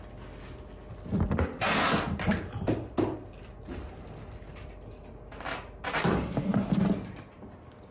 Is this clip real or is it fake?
real